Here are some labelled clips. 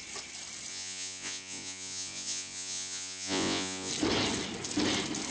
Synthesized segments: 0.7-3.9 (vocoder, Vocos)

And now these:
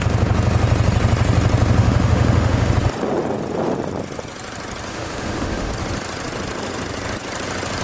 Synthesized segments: 1.8-2.7 (autoencoder, DAC-VAE); 4.9-5.7

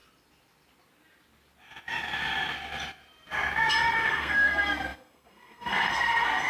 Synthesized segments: 3.9-6.5 (codec, SNAC)